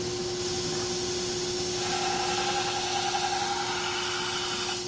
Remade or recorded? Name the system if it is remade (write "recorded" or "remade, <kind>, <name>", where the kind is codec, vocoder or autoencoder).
recorded